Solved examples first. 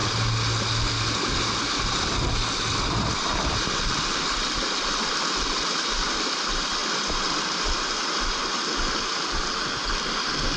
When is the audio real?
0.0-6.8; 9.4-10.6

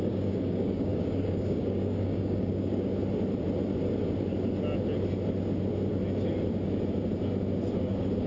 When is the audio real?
2.9-7.9

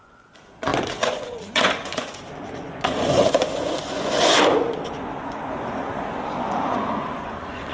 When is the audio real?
none

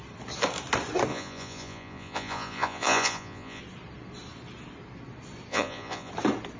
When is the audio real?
0.0-1.1; 3.6-5.5; 6.1-6.6

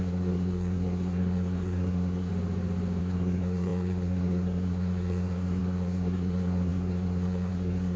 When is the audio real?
2.3-3.0

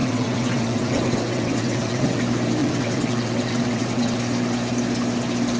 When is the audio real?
2.2-2.6; 4.2-5.6